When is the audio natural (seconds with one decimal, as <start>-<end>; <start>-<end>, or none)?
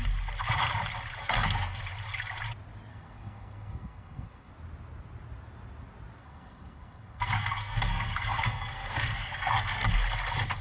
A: 0.0-1.2; 1.8-2.9; 4.5-6.2; 9.9-10.6